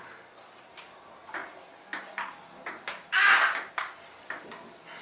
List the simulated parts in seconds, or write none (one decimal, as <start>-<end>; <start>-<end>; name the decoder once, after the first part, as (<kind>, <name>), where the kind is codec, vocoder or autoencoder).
none